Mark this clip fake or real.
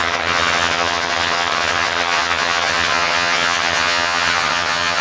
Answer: fake